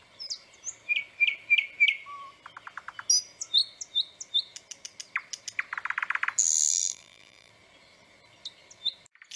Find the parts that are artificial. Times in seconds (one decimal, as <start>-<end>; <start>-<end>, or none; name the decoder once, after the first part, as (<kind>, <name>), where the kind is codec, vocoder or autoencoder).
6.7-7.5 (vocoder, BigVGAN v2)